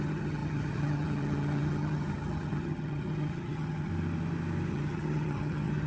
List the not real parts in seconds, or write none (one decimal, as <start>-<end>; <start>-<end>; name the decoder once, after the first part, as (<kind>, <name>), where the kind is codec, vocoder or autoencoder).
0.0-3.9 (vocoder, HiFi-GAN); 4.7-5.9